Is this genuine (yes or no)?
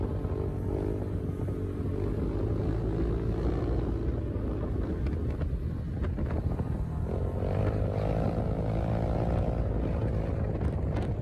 yes